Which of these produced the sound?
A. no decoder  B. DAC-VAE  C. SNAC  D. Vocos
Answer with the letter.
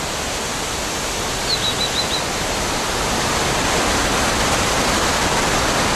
A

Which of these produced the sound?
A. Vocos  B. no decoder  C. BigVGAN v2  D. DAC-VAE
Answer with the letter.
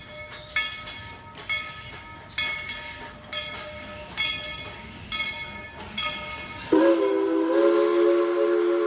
B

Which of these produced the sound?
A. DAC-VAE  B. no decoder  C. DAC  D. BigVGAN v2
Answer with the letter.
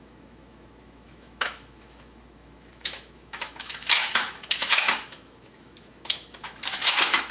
A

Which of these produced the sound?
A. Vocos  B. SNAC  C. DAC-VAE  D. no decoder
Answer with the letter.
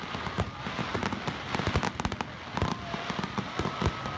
D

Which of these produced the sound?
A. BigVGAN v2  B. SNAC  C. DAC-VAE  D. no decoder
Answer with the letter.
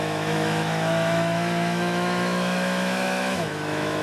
C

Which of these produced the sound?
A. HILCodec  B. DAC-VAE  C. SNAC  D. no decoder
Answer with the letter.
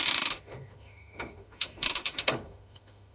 B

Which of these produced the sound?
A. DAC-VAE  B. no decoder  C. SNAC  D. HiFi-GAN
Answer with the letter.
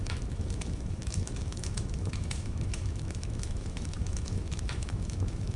A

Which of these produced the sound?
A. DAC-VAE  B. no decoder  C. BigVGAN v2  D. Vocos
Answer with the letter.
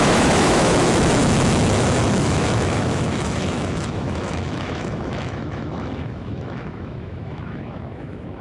A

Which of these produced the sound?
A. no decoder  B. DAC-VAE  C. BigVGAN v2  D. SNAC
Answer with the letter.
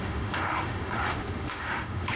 B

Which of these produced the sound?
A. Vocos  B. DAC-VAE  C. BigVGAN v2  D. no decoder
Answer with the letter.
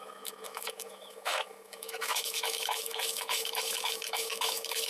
B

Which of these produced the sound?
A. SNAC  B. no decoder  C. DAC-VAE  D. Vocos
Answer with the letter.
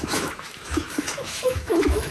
C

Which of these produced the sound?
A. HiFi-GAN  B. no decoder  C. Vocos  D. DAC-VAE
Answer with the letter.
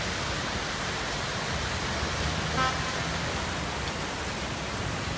B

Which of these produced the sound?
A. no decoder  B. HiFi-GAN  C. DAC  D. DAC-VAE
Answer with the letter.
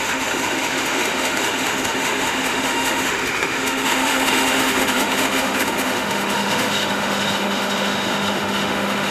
D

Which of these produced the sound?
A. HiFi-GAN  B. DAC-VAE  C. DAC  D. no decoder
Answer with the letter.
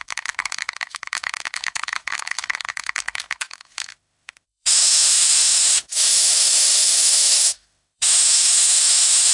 B